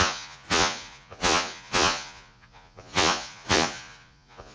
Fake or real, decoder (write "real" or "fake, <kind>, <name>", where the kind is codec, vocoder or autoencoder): fake, vocoder, Vocos